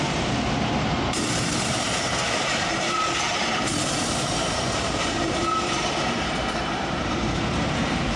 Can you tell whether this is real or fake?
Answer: fake